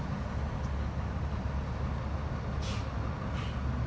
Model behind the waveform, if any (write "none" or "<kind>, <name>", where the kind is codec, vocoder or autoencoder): none